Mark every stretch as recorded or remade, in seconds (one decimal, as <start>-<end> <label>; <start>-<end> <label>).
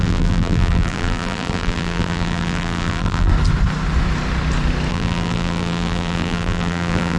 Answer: 0.0-3.3 remade; 3.3-4.9 recorded; 4.9-7.2 remade